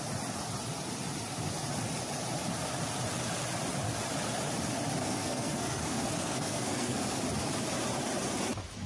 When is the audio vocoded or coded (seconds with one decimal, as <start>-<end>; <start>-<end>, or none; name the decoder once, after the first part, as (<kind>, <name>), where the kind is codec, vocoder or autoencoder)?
5.0-7.2 (codec, SNAC)